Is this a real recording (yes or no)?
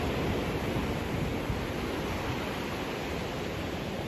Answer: yes